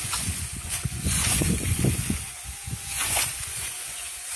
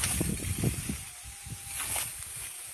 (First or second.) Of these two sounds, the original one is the second